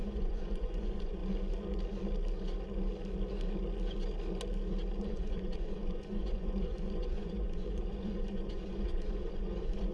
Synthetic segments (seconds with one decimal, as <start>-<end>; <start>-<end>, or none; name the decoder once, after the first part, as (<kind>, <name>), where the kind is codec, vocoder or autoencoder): 0.0-1.2 (vocoder, Vocos); 5.0-9.9